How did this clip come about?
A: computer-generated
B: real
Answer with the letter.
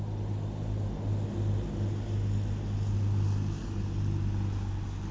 B